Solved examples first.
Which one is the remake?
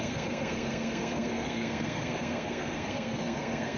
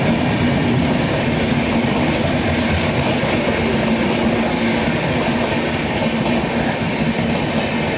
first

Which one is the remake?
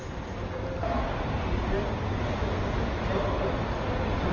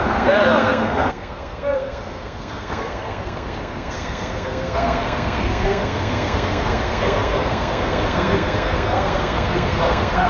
second